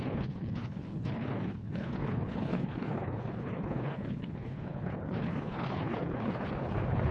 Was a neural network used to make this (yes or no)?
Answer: yes